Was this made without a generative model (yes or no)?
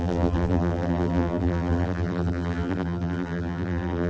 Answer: no